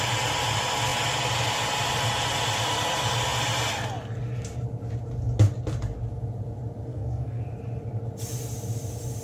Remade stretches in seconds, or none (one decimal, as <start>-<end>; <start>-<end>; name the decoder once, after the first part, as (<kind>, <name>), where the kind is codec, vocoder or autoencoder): 6.9-7.4 (codec, SNAC)